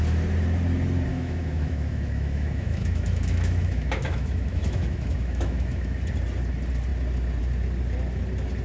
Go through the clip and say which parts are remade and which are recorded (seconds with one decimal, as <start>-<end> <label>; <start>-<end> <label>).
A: 0.0-1.1 recorded; 1.1-6.0 remade; 6.0-8.6 recorded

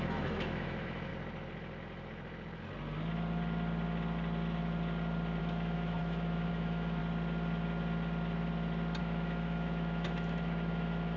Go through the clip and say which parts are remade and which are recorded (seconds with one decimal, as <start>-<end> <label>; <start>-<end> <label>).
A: 0.0-1.1 remade; 1.1-5.4 recorded; 5.4-7.0 remade; 7.0-9.0 recorded; 9.0-11.2 remade